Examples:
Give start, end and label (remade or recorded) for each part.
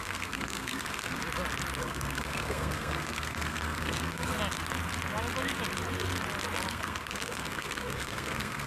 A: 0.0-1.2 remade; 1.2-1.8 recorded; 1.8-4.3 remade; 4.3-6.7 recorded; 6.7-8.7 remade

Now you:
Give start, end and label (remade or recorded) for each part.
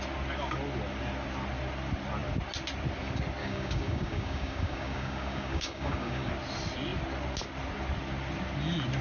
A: 0.0-3.4 recorded; 3.4-6.3 remade; 6.3-9.0 recorded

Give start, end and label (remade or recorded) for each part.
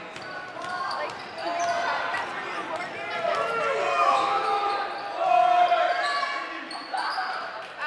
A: 0.0-4.0 recorded; 4.0-4.6 remade; 4.6-7.9 recorded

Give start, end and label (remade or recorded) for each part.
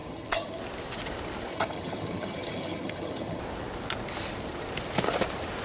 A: 0.0-0.6 remade; 0.6-1.5 recorded; 1.5-3.4 remade; 3.4-5.6 recorded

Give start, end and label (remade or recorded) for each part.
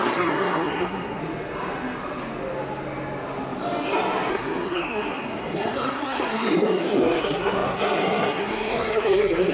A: 0.0-1.2 remade; 1.2-4.3 recorded; 4.3-9.5 remade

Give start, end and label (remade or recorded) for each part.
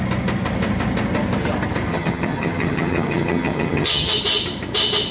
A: 0.0-1.9 recorded; 1.9-4.1 remade; 4.1-5.1 recorded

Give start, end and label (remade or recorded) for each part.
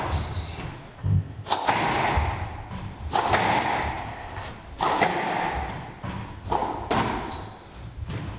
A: 0.0-1.0 recorded; 1.0-1.7 remade; 1.7-4.0 recorded; 4.0-4.5 remade; 4.5-8.4 recorded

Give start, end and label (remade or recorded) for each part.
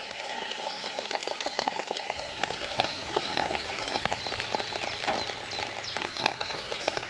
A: 0.0-4.2 remade; 4.2-6.0 recorded; 6.0-7.1 remade